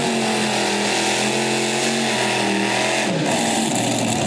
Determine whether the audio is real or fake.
real